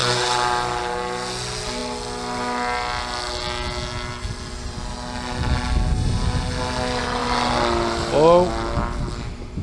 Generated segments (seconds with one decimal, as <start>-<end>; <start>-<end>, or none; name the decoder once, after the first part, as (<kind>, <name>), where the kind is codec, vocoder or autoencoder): none